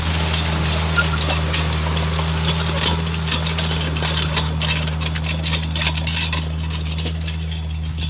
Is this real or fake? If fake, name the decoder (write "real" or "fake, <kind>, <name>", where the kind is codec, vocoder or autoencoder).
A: real